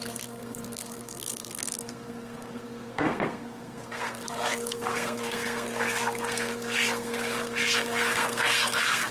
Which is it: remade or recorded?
remade